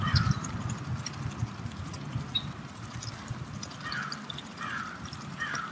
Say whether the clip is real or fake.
real